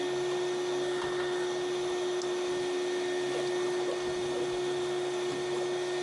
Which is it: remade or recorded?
recorded